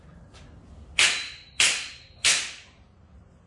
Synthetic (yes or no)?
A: no